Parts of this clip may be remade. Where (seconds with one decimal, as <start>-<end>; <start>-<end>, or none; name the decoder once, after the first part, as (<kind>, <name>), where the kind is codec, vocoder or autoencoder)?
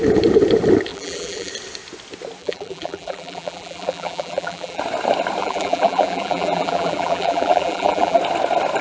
0.9-1.5 (vocoder, BigVGAN v2); 2.4-4.8; 5.4-8.2